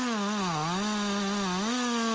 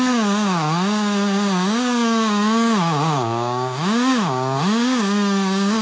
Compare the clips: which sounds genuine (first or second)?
first